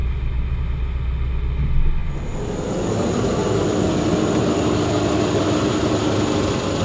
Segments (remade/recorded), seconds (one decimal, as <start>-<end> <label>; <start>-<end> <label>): 0.0-6.8 recorded